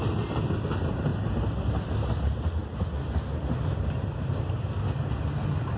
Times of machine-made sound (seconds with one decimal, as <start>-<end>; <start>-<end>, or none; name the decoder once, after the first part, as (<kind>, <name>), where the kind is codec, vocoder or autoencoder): none